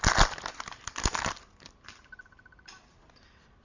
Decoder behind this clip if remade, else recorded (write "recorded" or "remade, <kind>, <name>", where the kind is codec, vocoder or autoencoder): recorded